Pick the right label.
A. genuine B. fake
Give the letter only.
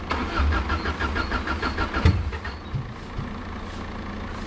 A